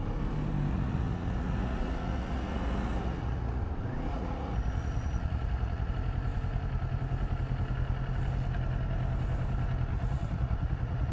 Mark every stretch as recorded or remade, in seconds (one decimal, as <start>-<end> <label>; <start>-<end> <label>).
0.0-0.7 recorded; 0.7-3.6 remade; 3.6-4.1 recorded; 4.1-5.9 remade; 5.9-9.9 recorded; 9.9-11.1 remade